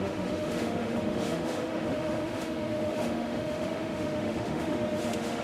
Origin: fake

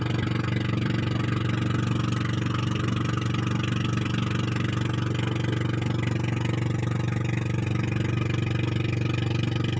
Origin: real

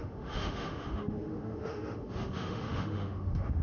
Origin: fake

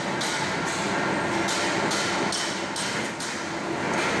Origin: real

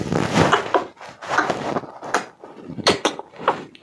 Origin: real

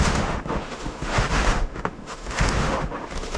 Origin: fake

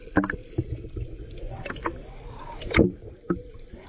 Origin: real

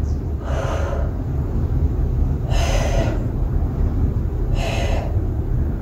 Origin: real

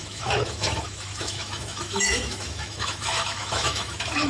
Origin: fake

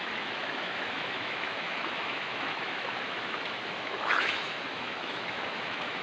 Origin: fake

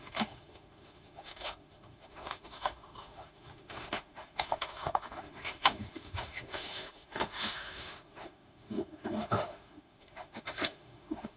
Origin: fake